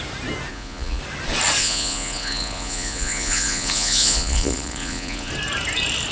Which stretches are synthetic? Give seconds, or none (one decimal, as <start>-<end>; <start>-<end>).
0.5-1.0; 1.6-5.3